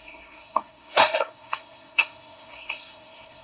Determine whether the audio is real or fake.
fake